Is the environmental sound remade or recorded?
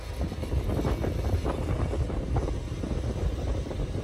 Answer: recorded